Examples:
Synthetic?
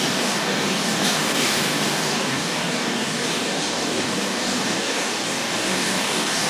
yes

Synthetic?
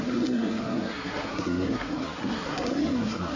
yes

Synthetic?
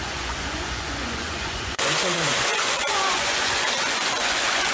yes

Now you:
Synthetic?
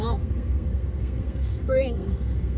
yes